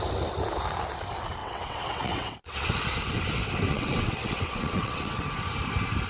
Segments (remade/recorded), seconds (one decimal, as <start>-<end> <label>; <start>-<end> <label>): 0.0-1.4 recorded; 1.4-2.7 remade; 2.7-3.7 recorded; 3.7-5.2 remade; 5.2-6.1 recorded

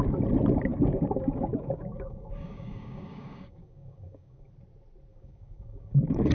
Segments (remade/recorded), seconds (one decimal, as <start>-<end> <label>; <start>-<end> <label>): 0.0-0.7 recorded; 0.7-4.5 remade; 4.5-5.1 recorded; 5.1-6.3 remade

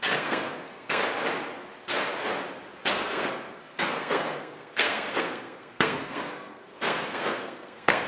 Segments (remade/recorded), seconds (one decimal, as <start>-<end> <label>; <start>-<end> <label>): 0.0-1.0 remade; 1.0-2.9 recorded; 2.9-8.1 remade

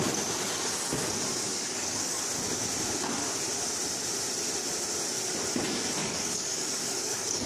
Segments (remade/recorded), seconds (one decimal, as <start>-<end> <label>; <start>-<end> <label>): 0.0-1.5 recorded; 1.5-2.2 remade; 2.2-6.0 recorded; 6.0-7.5 remade

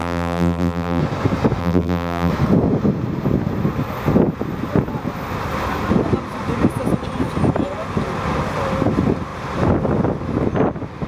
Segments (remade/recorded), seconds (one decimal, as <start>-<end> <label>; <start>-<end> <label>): 0.0-1.0 remade; 1.0-1.6 recorded; 1.6-2.3 remade; 2.3-11.1 recorded

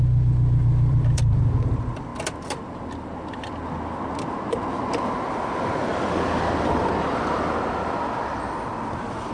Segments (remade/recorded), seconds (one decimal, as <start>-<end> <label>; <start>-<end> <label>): 0.0-2.1 remade; 2.1-5.1 recorded; 5.1-9.3 remade

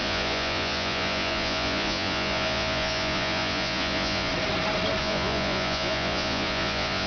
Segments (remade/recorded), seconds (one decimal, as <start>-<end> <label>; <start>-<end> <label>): 0.0-4.3 remade; 4.3-5.0 recorded; 5.0-7.1 remade

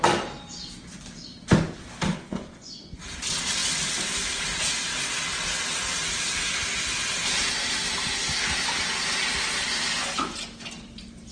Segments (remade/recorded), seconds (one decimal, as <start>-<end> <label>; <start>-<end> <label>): 0.0-2.1 recorded; 2.1-3.0 remade; 3.0-11.3 recorded